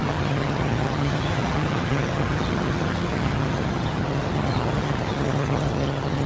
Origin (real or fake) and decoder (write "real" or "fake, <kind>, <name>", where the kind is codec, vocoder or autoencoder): fake, vocoder, HiFi-GAN